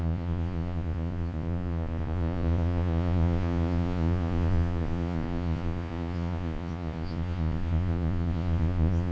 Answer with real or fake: fake